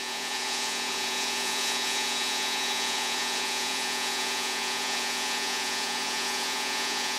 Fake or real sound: fake